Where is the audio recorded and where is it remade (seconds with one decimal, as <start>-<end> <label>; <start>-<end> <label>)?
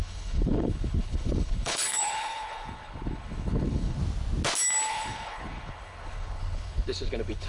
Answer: 0.0-4.0 remade; 4.0-4.9 recorded; 4.9-7.5 remade